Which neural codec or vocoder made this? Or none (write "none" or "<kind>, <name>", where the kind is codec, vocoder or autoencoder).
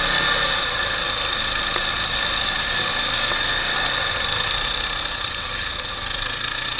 none